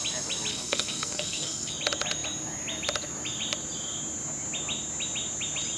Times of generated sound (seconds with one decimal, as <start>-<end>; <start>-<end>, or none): 0.5-1.7